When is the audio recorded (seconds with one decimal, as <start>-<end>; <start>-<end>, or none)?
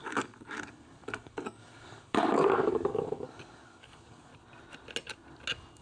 4.3-5.8